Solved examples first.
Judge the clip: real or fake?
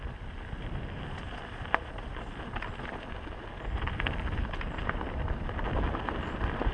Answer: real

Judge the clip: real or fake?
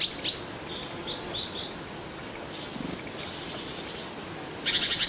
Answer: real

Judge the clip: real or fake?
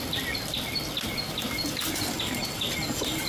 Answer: real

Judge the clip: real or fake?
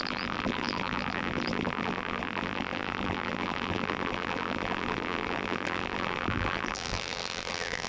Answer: fake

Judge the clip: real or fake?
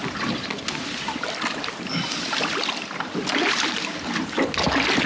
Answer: real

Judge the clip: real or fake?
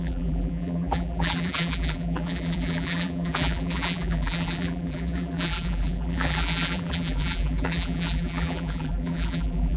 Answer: fake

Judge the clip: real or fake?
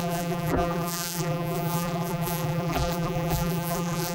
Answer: fake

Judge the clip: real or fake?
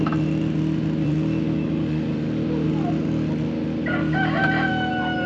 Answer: real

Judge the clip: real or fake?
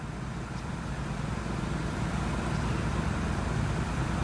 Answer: fake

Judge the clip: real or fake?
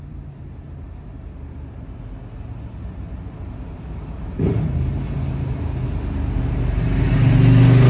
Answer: real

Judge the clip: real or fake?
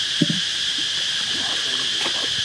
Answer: fake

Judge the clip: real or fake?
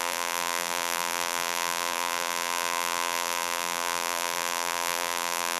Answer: fake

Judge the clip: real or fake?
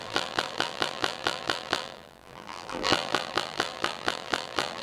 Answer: fake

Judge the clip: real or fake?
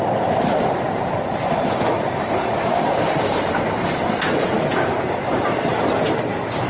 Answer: fake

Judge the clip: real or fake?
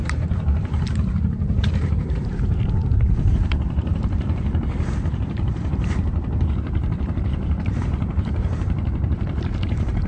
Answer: fake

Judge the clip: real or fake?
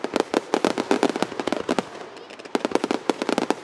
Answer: real